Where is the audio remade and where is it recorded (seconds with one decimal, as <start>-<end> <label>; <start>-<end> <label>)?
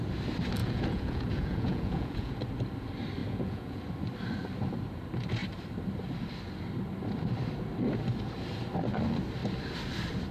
0.0-0.6 recorded; 0.6-2.3 remade; 2.3-3.2 recorded; 3.2-3.8 remade; 3.8-10.3 recorded